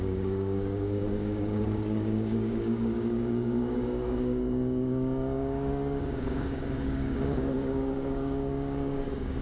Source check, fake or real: fake